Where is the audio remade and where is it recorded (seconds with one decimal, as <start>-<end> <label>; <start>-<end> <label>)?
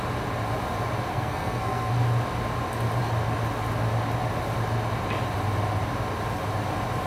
0.0-1.1 recorded; 1.1-1.9 remade; 1.9-7.1 recorded